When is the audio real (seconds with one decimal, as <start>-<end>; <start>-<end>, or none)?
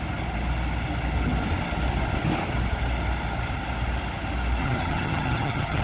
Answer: 0.0-4.6